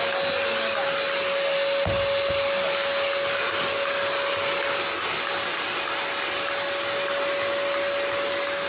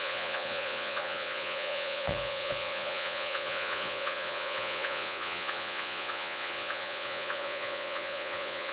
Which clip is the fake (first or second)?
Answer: second